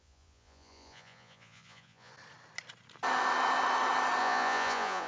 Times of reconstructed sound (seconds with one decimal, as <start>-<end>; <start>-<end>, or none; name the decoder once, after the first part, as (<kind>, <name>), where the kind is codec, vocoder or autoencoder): 0.0-2.1 (vocoder, Vocos); 4.2-5.1